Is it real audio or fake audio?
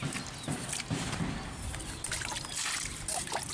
real